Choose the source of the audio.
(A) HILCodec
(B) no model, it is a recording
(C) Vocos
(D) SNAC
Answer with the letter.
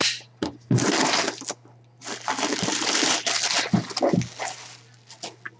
B